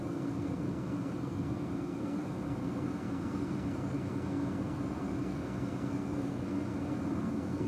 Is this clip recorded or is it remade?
remade